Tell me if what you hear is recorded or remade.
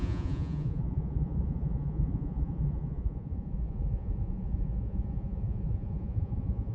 remade